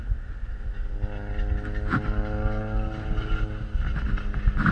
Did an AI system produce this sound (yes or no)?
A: no